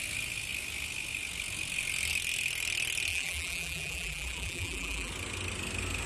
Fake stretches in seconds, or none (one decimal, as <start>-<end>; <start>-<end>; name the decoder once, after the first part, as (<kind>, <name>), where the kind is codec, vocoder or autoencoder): 3.1-5.1 (vocoder, BigVGAN v2)